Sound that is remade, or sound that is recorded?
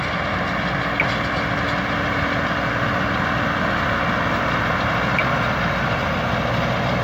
recorded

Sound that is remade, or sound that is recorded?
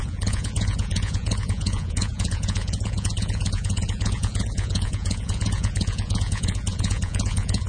remade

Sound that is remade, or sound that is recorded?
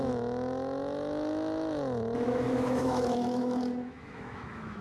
remade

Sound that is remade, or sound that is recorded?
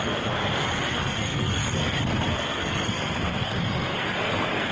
remade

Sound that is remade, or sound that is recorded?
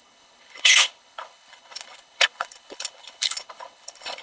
remade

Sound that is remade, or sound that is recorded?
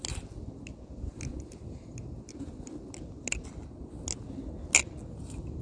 recorded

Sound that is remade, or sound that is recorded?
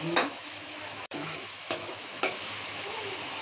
remade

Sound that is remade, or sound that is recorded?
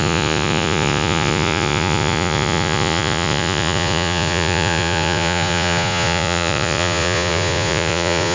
remade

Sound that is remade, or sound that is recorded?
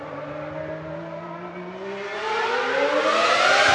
recorded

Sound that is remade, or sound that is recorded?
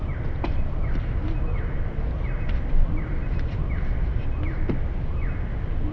recorded